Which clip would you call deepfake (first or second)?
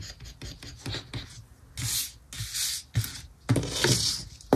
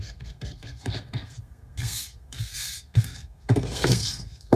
second